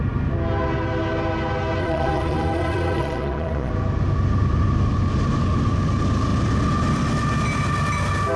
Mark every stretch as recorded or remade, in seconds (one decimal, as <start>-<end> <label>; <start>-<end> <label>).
0.0-1.8 recorded; 1.8-3.7 remade; 3.7-8.4 recorded